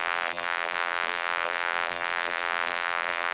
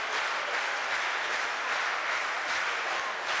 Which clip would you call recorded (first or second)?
second